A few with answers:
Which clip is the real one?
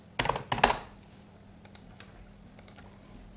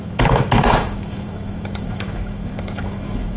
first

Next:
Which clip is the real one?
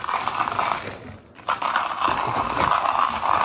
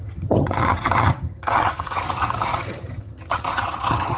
first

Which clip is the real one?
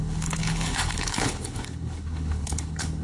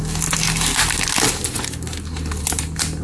second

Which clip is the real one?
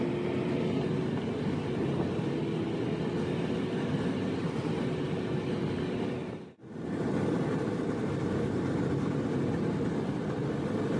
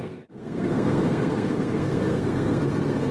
first